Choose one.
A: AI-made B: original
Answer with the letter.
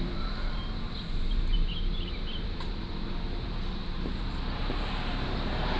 A